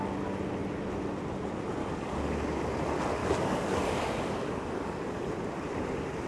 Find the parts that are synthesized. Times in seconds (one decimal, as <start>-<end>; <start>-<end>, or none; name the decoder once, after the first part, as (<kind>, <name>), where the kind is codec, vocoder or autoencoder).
1.8-2.3 (codec, DAC); 3.2-5.2